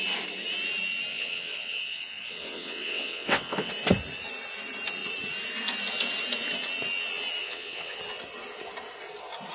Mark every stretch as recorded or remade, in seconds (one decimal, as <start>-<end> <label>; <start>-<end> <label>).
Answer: 0.0-1.1 recorded; 1.1-3.7 remade; 3.7-7.4 recorded; 7.4-8.0 remade; 8.0-9.5 recorded